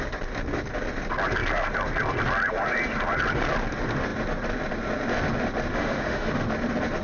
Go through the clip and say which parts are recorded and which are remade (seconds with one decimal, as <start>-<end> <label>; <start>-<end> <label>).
0.0-5.7 recorded; 5.7-6.3 remade; 6.3-7.0 recorded